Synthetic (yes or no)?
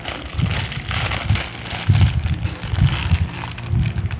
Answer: no